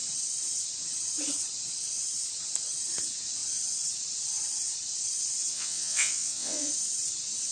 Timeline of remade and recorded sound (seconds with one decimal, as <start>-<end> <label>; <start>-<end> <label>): 0.0-5.5 recorded; 5.5-6.7 remade; 6.7-7.5 recorded